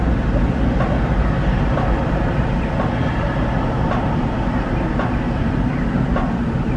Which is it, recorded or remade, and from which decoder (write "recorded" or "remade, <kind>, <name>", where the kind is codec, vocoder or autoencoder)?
recorded